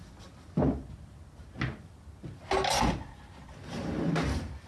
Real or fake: real